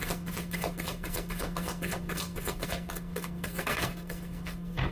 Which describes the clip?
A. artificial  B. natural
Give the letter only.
A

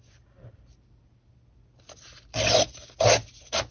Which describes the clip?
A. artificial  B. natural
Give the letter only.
B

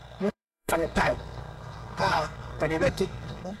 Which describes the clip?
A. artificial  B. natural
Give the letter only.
A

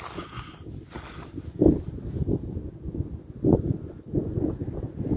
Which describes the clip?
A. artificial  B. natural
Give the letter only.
B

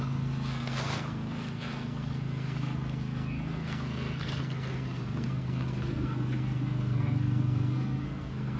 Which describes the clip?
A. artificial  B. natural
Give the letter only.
A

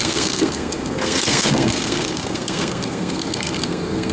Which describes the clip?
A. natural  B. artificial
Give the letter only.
B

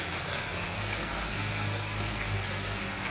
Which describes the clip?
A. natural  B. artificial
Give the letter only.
B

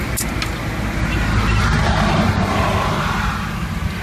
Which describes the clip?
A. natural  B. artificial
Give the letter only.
A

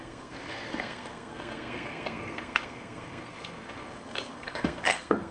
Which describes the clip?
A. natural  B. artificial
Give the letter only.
B